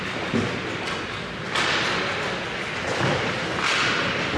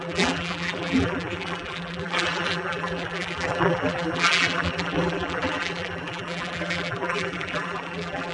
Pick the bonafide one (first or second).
first